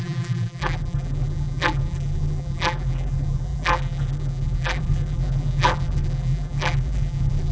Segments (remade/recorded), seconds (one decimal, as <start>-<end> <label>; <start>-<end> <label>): 0.0-7.5 remade